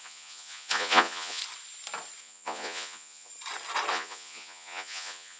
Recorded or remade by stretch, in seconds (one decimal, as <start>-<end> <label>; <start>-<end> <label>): 0.0-1.4 remade; 1.4-2.2 recorded; 2.2-3.3 remade; 3.3-3.9 recorded; 3.9-5.4 remade